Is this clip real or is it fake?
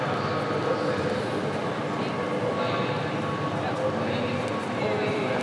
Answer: real